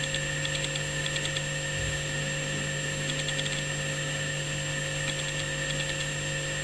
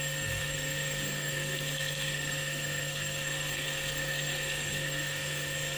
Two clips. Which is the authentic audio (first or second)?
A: first